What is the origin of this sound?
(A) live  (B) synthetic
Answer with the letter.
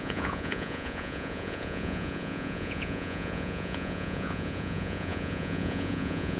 B